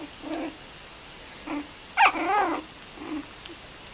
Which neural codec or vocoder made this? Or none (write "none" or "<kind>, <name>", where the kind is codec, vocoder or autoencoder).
none